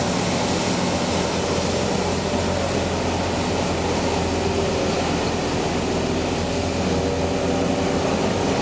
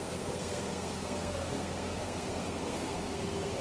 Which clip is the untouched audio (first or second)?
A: first